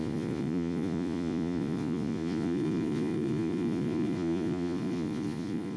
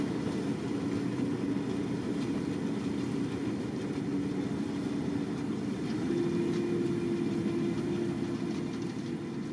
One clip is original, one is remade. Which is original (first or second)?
second